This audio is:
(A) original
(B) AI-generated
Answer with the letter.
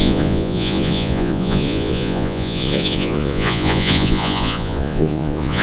B